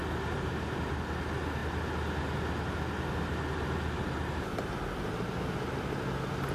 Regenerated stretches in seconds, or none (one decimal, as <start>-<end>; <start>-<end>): none